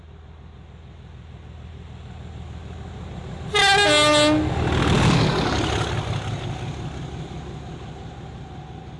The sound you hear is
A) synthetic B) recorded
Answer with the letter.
B